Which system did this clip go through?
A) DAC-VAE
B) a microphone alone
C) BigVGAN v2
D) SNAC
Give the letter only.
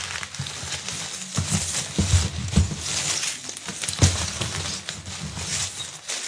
B